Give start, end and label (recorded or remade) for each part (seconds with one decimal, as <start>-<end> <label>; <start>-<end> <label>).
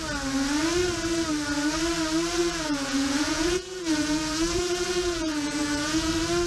0.0-2.4 recorded; 2.4-6.1 remade; 6.1-6.5 recorded